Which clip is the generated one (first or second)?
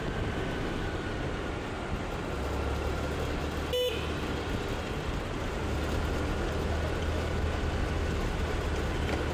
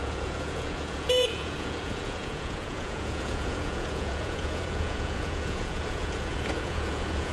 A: second